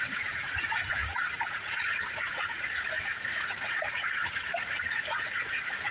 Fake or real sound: fake